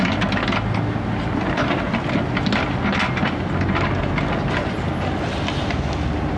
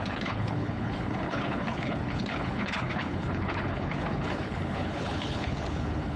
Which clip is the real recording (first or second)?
first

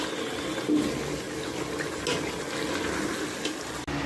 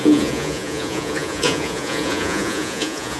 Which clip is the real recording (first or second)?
first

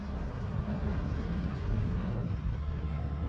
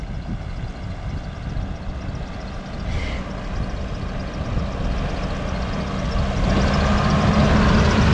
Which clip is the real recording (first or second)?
second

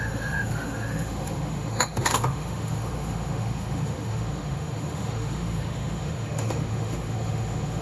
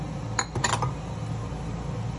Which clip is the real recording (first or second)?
second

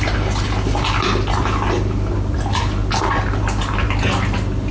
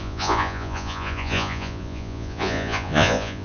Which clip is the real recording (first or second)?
first